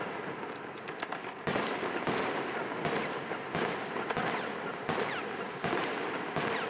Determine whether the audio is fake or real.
real